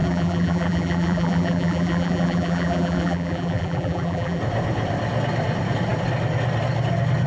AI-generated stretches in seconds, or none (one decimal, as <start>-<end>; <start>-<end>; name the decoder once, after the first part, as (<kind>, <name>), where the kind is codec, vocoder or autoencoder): 0.0-4.4 (vocoder, BigVGAN v2)